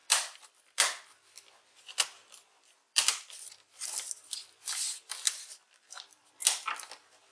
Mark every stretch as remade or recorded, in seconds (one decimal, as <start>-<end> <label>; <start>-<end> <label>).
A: 0.0-0.6 remade; 0.6-2.2 recorded; 2.2-6.2 remade; 6.2-7.3 recorded